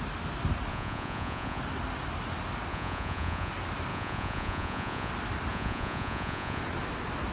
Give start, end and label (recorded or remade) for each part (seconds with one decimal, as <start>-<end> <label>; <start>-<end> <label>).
0.0-0.7 recorded; 0.7-1.6 remade; 1.6-2.7 recorded; 2.7-3.5 remade; 3.5-3.9 recorded; 3.9-5.1 remade; 5.1-5.5 recorded; 5.5-6.6 remade; 6.6-7.3 recorded